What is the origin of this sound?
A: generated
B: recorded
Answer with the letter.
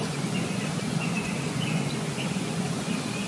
A